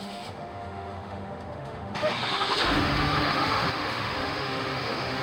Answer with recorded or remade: remade